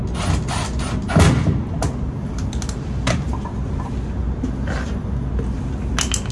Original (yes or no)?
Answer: yes